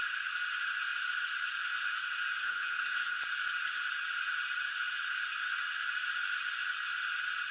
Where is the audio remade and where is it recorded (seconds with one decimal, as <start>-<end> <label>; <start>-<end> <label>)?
0.0-2.4 recorded; 2.4-3.2 remade; 3.2-7.5 recorded